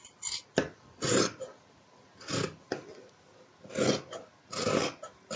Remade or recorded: recorded